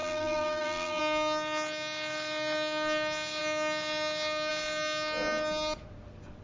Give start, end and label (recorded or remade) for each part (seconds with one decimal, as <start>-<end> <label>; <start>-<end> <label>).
0.0-1.0 remade; 1.0-6.4 recorded